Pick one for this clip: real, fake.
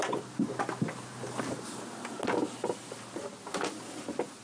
real